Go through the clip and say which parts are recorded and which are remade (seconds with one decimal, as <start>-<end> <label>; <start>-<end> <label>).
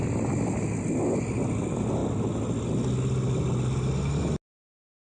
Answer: 0.0-5.0 recorded